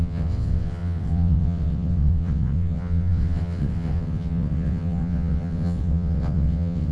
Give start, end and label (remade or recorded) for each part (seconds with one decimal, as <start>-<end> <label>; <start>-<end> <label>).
0.0-6.9 remade